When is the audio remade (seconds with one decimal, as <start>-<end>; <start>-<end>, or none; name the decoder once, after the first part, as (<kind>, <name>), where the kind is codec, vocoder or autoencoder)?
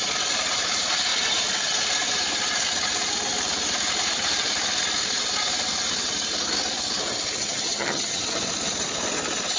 7.4-8.2 (vocoder, HiFi-GAN)